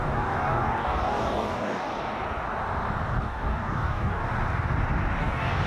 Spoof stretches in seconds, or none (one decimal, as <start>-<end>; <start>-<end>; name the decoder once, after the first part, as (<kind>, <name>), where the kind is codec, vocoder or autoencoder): 0.0-1.9 (codec, DAC); 3.2-4.3; 5.2-5.7

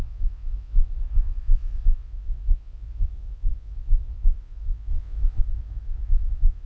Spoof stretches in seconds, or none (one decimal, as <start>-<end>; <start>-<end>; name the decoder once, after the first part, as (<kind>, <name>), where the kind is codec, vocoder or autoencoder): 0.0-6.7 (vocoder, WaveNeXt)

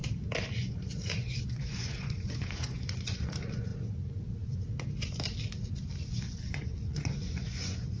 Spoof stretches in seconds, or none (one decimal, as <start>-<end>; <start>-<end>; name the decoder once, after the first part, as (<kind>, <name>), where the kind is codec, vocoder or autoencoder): 0.6-3.7 (vocoder, Vocos); 6.1-8.0